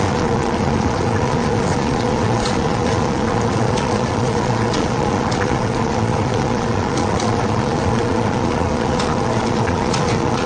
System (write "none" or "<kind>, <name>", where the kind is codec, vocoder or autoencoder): vocoder, Vocos